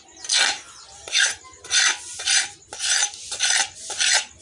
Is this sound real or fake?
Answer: real